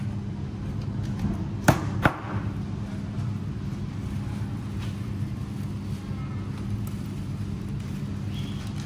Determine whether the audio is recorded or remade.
recorded